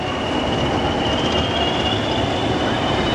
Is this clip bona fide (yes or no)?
yes